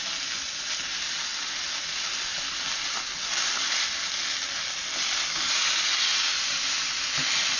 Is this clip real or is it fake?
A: real